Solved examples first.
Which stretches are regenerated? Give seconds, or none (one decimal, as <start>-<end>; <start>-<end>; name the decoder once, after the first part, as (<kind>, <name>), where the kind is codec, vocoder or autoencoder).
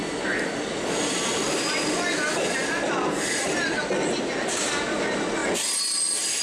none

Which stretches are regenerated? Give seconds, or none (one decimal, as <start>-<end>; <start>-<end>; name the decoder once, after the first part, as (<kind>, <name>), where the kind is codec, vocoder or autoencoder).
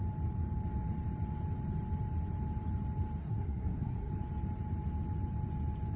3.2-4.1 (codec, SNAC)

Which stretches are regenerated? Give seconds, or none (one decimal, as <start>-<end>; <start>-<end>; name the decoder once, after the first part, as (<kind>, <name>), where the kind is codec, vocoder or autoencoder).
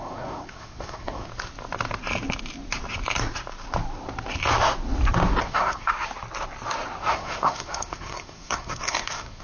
0.0-1.3 (codec, SNAC); 5.4-5.9; 7.0-9.4